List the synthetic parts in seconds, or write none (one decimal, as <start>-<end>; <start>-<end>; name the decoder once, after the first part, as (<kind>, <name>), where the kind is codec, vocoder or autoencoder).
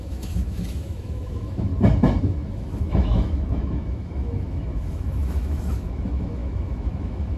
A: 0.0-1.7 (autoencoder, DAC-VAE); 2.2-7.4